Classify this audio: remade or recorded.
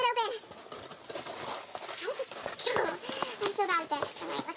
recorded